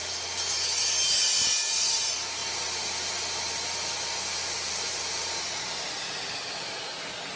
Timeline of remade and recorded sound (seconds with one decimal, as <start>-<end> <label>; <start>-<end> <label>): 0.0-7.4 recorded